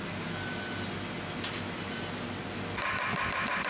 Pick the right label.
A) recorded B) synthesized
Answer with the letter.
A